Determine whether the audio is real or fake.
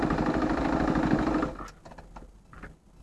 real